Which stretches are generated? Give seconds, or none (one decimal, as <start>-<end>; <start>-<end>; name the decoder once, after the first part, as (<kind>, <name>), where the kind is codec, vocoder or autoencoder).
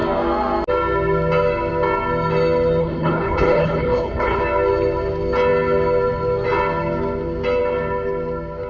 2.8-4.4 (codec, HILCodec)